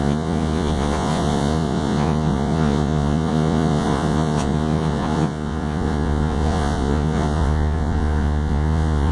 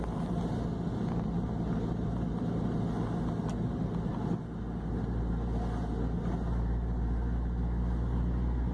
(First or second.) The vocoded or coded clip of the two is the first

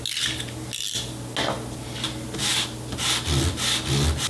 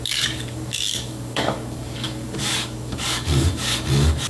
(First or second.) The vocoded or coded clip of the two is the second